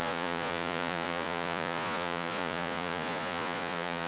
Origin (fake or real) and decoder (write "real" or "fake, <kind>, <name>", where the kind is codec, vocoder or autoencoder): fake, vocoder, Vocos